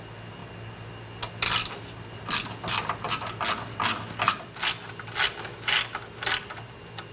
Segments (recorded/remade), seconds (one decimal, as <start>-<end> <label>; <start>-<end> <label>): 0.0-7.1 recorded